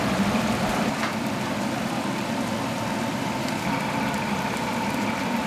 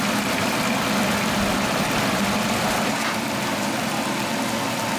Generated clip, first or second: first